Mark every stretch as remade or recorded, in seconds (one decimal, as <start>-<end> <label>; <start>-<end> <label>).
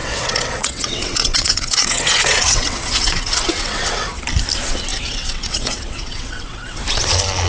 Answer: 0.0-4.2 remade; 4.2-4.9 recorded; 4.9-6.8 remade; 6.8-7.5 recorded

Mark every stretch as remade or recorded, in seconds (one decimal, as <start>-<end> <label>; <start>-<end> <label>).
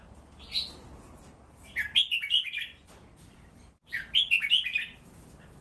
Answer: 0.0-2.0 recorded; 2.0-2.9 remade; 2.9-5.6 recorded